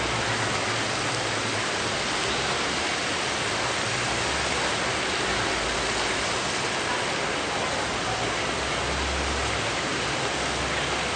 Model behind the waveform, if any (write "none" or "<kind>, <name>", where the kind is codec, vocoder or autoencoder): none